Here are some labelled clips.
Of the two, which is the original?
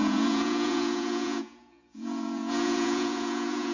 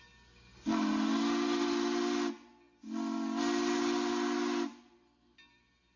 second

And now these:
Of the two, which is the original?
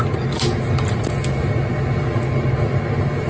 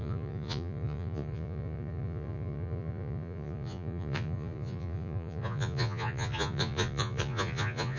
first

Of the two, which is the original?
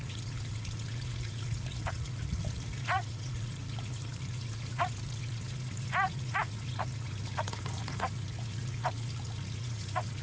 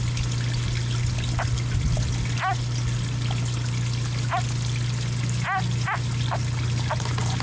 second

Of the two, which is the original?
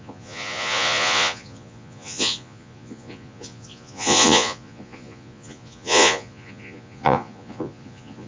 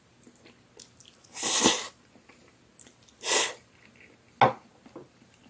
second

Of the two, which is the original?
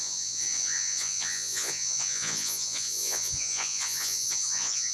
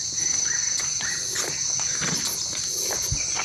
second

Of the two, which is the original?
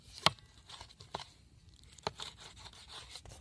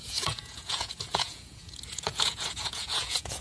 first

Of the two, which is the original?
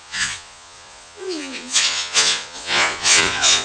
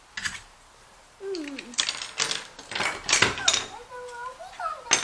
second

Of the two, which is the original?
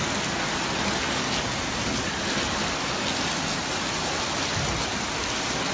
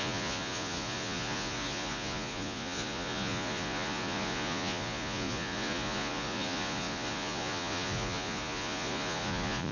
first